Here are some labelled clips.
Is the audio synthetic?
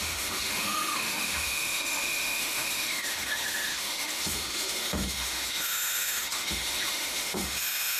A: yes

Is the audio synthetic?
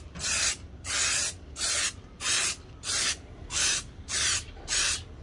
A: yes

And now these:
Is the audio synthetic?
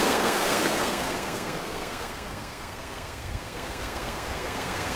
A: yes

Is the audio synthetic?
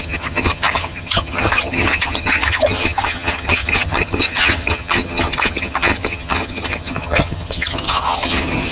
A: yes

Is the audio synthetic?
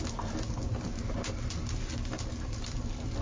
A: no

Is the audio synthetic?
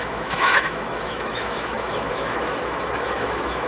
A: yes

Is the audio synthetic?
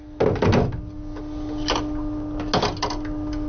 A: no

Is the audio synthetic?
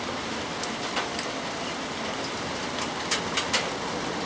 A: no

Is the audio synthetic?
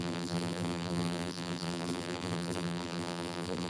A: yes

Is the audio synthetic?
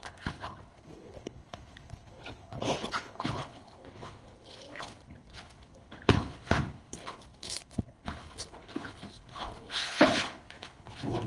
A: yes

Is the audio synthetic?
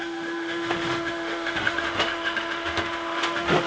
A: yes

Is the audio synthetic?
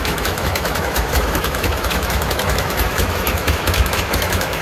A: yes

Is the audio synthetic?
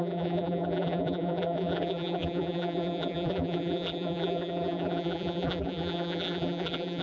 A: yes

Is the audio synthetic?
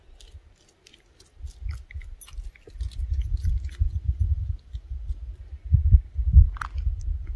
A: no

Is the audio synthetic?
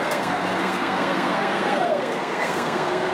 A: yes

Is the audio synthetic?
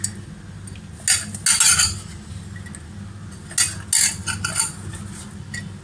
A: no